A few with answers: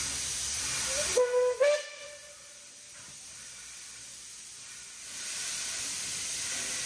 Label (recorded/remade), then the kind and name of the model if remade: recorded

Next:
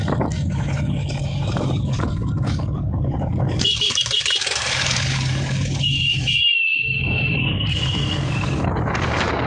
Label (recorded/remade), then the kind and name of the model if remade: remade, codec, DAC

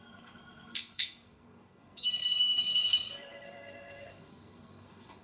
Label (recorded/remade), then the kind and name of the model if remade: remade, codec, SNAC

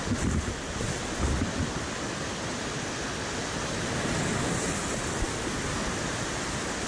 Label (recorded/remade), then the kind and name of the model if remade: recorded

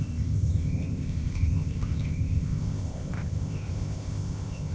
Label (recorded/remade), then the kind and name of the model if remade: remade, codec, ZipCodec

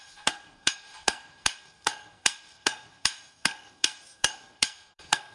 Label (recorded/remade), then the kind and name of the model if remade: remade, codec, SNAC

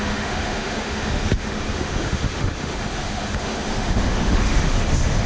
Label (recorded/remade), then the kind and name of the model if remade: remade, autoencoder, DAC-VAE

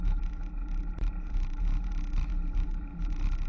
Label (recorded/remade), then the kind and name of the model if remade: recorded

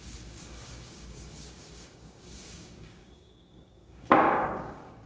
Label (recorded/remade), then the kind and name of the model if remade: remade, codec, DAC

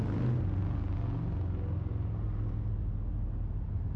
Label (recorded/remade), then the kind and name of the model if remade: recorded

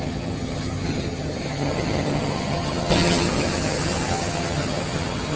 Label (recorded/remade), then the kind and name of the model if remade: remade, vocoder, HiFi-GAN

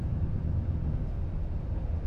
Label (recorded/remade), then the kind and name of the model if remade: recorded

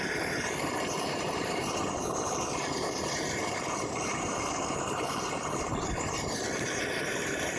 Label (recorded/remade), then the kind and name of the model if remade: remade, vocoder, BigVGAN v2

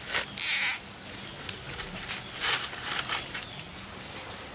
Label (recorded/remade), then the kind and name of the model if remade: recorded